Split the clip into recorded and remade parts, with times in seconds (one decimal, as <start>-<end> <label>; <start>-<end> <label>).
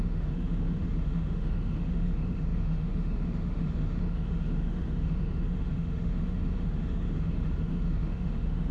0.0-8.7 remade